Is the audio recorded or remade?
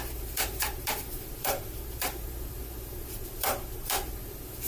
remade